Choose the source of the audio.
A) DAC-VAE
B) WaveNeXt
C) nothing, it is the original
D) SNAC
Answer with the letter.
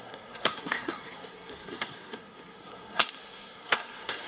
D